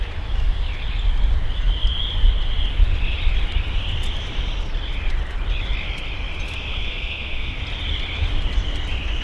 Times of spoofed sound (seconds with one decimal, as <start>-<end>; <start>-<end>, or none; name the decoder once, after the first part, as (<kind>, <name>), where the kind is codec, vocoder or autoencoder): 6.7-7.6 (codec, SNAC)